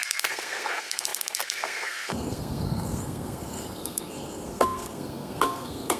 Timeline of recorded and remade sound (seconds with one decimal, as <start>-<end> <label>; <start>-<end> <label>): 0.0-6.0 remade